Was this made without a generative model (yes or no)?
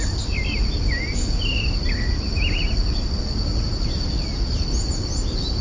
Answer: yes